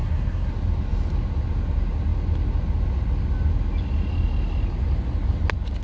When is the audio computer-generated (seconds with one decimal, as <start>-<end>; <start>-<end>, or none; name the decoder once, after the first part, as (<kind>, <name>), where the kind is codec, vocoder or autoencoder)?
0.0-0.5 (codec, SNAC)